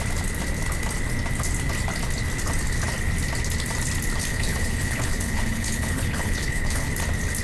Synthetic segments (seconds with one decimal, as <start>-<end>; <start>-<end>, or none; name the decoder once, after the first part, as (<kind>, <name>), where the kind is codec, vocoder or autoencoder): 4.3-6.9 (codec, HILCodec)